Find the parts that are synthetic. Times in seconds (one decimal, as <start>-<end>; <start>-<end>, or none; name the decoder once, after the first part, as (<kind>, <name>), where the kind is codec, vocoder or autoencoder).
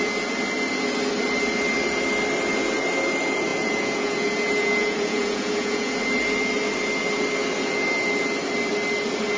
3.5-6.0 (vocoder, Vocos)